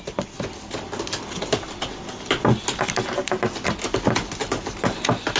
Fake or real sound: real